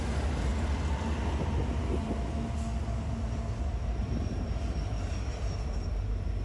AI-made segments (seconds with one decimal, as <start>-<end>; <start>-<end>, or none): 0.0-0.5; 4.0-6.4